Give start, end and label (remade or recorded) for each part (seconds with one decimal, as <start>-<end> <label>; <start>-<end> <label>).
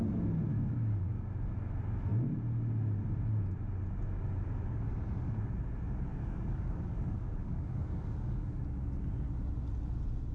0.0-0.5 recorded; 0.5-1.3 remade; 1.3-6.1 recorded; 6.1-8.6 remade; 8.6-10.3 recorded